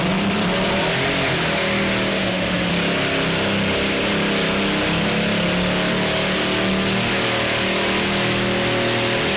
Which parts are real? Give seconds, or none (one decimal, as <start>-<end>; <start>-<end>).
0.0-2.1; 2.7-9.4